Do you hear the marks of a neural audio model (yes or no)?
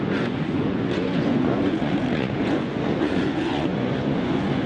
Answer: yes